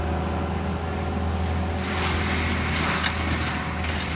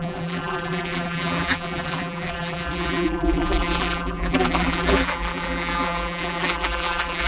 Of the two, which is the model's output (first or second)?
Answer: second